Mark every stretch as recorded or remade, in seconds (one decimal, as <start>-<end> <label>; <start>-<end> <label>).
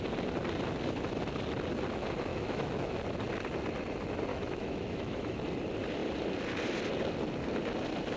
0.0-2.3 recorded; 2.3-3.0 remade; 3.0-4.3 recorded; 4.3-5.4 remade; 5.4-8.2 recorded